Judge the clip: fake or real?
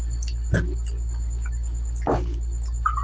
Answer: real